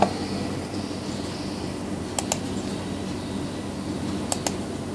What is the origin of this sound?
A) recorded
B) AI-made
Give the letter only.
A